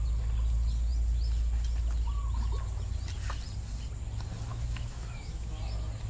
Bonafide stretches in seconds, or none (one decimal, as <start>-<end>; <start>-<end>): 0.0-4.5; 5.6-6.1